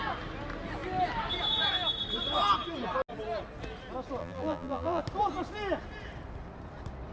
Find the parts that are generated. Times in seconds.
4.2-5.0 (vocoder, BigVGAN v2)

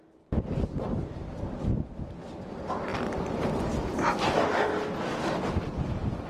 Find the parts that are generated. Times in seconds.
2.9-3.5 (vocoder, BigVGAN v2)

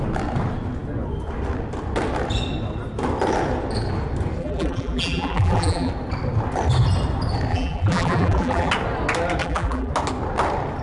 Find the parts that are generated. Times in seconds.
4.4-5.9 (vocoder, BigVGAN v2); 7.5-8.7; 9.4-9.9

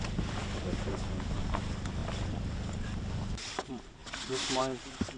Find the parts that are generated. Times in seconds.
0.0-0.4 (vocoder, BigVGAN v2); 0.9-4.0; 4.6-5.2

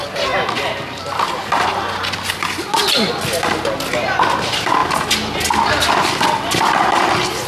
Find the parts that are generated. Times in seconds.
none

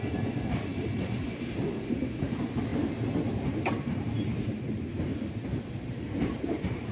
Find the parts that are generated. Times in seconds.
0.0-2.7 (vocoder, BigVGAN v2); 3.5-5.1; 5.7-6.9

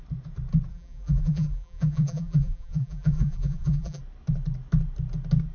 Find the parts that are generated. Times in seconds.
0.7-4.0 (vocoder, BigVGAN v2)

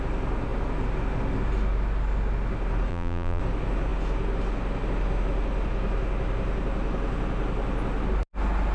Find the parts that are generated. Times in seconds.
2.9-3.4 (vocoder, BigVGAN v2)